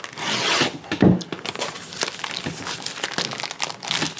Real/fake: real